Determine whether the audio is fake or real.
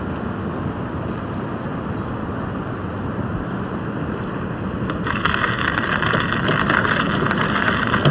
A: real